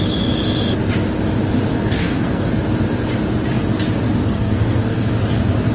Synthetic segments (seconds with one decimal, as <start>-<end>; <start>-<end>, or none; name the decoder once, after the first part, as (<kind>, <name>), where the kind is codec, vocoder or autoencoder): 1.7-2.5 (codec, SNAC); 4.2-5.2